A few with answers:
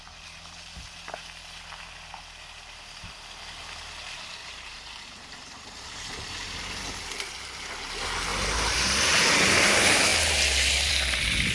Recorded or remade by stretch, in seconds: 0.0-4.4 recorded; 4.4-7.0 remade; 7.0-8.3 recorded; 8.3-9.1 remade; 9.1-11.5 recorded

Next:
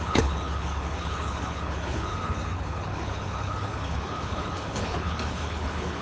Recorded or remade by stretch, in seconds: 0.0-6.0 remade

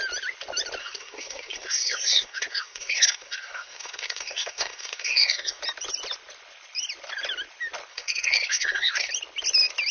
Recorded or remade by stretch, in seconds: 0.0-0.8 recorded; 0.8-5.6 remade; 5.6-7.9 recorded; 7.9-9.1 remade; 9.1-9.9 recorded

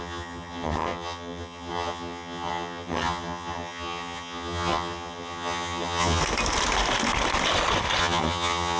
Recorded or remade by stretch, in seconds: 0.0-6.2 remade; 6.2-8.0 recorded; 8.0-8.8 remade

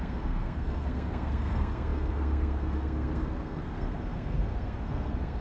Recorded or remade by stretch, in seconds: 0.0-5.4 remade

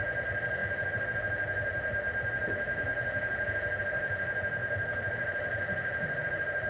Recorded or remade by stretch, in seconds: 0.0-4.6 recorded; 4.6-6.7 remade

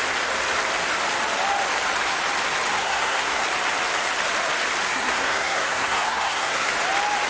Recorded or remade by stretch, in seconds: 0.0-2.8 recorded; 2.8-3.4 remade; 3.4-4.9 recorded; 4.9-6.7 remade; 6.7-7.3 recorded

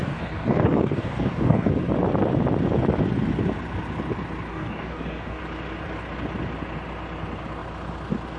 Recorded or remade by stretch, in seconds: 0.0-1.7 remade; 1.7-4.5 recorded; 4.5-5.4 remade; 5.4-8.4 recorded